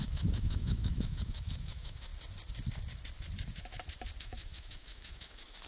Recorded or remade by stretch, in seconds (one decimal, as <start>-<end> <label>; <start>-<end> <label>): 0.0-2.1 remade; 2.1-4.2 recorded; 4.2-5.7 remade